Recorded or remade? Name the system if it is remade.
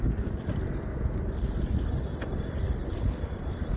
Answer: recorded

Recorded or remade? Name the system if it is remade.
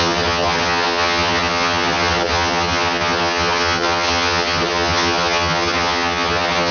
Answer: remade, vocoder, HiFi-GAN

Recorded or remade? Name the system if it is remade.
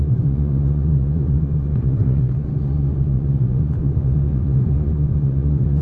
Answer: remade, vocoder, Vocos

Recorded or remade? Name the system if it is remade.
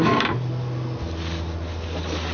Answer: recorded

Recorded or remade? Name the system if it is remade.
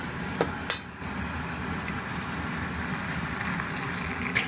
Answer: recorded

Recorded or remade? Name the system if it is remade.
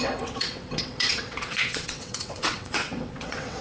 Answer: remade, vocoder, WaveNeXt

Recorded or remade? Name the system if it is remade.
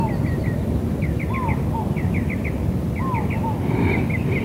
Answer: recorded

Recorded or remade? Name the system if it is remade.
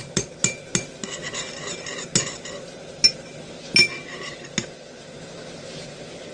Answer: recorded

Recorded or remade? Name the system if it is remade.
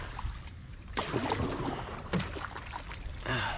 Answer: recorded